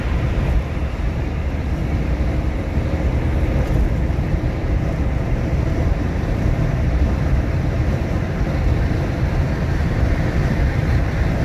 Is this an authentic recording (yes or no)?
no